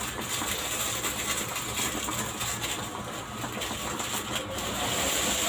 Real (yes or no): yes